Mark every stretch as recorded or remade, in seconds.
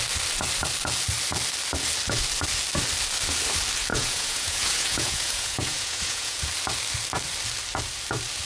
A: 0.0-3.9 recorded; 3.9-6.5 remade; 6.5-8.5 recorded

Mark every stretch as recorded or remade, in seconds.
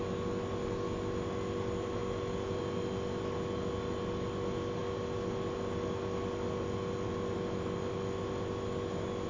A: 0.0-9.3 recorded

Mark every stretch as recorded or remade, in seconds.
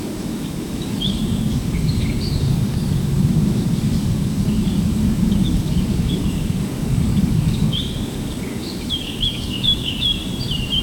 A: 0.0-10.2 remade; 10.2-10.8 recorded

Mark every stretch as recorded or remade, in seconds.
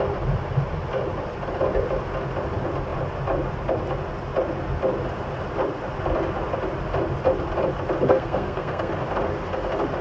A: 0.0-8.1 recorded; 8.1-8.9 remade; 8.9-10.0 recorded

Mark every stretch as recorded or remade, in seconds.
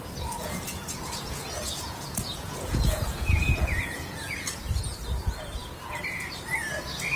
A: 0.0-0.4 recorded; 0.4-4.6 remade; 4.6-7.2 recorded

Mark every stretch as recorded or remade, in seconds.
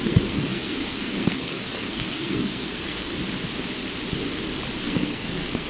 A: 0.0-3.1 remade; 3.1-4.8 recorded; 4.8-5.7 remade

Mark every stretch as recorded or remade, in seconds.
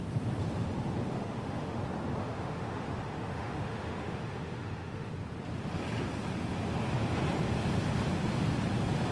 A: 0.0-1.1 recorded; 1.1-1.8 remade; 1.8-2.2 recorded; 2.2-5.1 remade; 5.1-9.1 recorded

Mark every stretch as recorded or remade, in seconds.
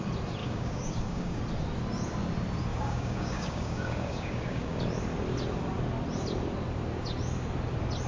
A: 0.0-0.4 recorded; 0.4-1.4 remade; 1.4-2.7 recorded; 2.7-4.8 remade; 4.8-8.1 recorded